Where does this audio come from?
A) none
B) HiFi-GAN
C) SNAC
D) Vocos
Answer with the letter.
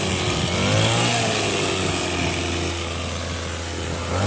A